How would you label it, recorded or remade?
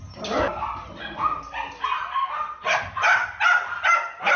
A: recorded